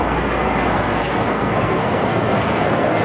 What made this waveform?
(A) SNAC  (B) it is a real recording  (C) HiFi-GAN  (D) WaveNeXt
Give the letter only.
A